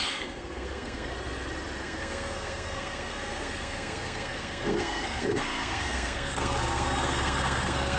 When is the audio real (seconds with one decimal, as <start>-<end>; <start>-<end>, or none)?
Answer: 1.1-1.8